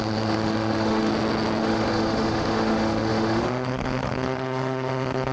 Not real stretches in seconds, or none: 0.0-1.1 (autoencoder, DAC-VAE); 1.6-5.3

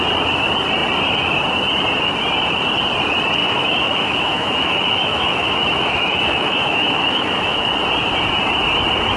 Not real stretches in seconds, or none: 3.4-7.7 (autoencoder, DAC-VAE)

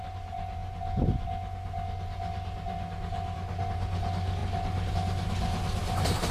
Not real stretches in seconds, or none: none

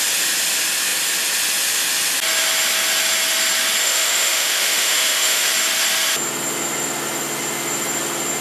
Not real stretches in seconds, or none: 3.8-5.5 (autoencoder, DAC-VAE)

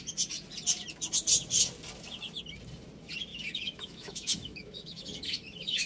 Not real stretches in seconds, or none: 3.3-5.9 (autoencoder, DAC-VAE)

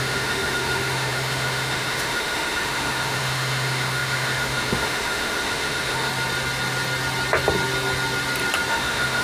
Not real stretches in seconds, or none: 0.0-6.1 (autoencoder, DAC-VAE); 8.7-9.2

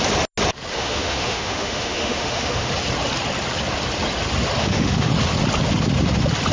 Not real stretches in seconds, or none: 0.7-2.7 (autoencoder, DAC-VAE); 4.6-5.1